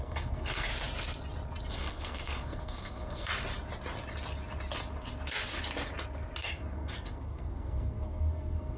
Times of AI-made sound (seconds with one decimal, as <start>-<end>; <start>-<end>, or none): 0.0-0.7; 1.7-3.3; 6.4-8.8